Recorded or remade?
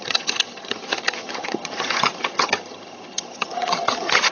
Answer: remade